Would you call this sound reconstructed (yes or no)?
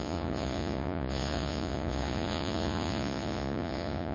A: yes